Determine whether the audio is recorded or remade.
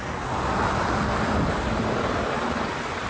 recorded